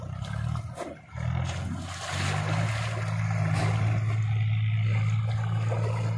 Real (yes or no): yes